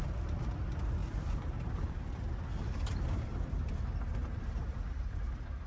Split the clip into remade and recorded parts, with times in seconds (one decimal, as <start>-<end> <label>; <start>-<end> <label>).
0.0-1.0 recorded; 1.0-3.7 remade; 3.7-4.2 recorded; 4.2-5.2 remade; 5.2-5.7 recorded